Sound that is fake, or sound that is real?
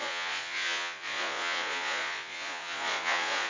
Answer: fake